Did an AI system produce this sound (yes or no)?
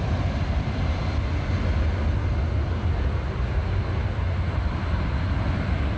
no